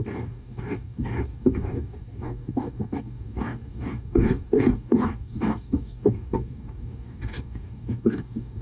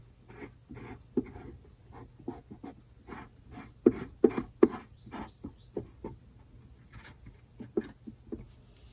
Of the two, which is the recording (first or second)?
second